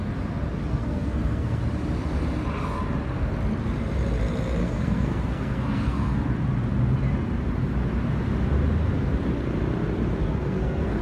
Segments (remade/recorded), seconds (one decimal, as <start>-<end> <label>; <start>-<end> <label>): 0.0-0.7 recorded; 0.7-1.6 remade; 1.6-4.6 recorded; 4.6-6.2 remade; 6.2-10.2 recorded; 10.2-11.0 remade